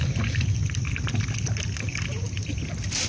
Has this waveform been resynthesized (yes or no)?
no